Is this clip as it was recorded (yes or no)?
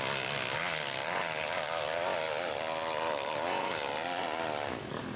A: yes